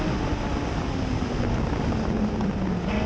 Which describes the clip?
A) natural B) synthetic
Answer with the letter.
A